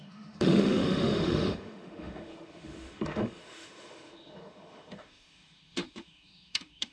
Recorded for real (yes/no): no